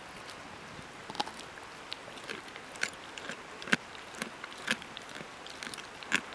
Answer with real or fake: real